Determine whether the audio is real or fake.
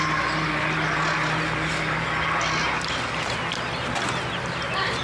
real